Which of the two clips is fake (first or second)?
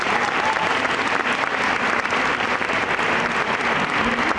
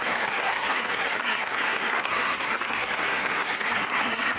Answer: second